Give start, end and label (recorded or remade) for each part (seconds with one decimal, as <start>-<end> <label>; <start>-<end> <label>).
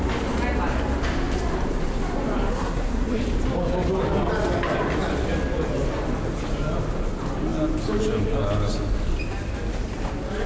0.0-2.5 recorded; 2.5-3.2 remade; 3.2-10.5 recorded